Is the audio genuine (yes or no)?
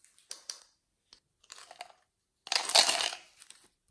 yes